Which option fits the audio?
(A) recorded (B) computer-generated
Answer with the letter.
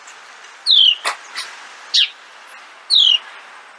A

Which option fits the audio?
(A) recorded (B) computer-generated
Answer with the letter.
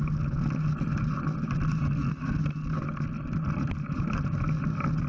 A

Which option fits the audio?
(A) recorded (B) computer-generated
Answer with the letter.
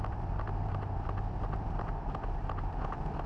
B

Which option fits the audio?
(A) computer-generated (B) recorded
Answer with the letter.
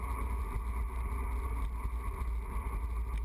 B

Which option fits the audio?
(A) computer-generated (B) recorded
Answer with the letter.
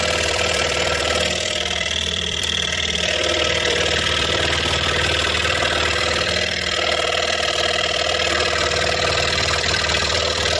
A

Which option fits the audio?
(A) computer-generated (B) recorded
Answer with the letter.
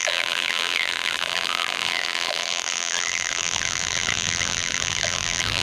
A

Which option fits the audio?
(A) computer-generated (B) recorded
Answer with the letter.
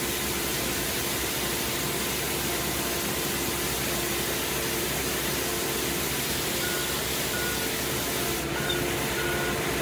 B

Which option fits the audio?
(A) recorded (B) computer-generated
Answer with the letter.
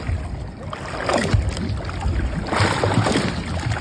A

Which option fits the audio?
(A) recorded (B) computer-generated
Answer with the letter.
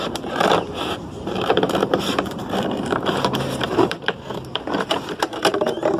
B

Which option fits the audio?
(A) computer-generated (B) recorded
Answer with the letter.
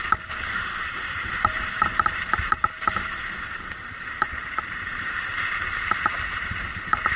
A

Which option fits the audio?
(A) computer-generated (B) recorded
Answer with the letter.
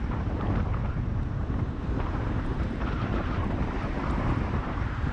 A